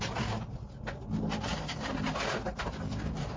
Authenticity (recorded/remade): recorded